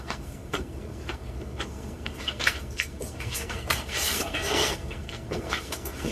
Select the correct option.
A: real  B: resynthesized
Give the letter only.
B